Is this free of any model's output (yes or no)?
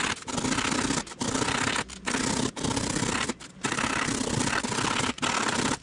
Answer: yes